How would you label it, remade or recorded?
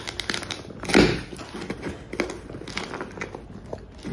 recorded